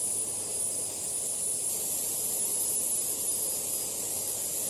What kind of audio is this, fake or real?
real